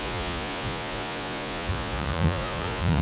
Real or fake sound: fake